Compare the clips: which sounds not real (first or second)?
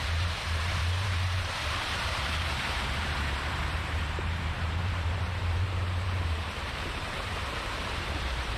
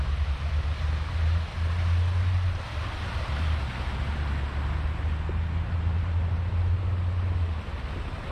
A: first